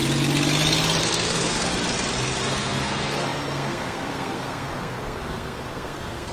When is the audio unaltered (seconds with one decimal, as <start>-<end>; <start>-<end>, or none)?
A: 0.0-1.0; 1.7-2.4